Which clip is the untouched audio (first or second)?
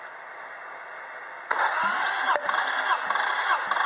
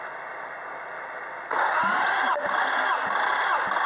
first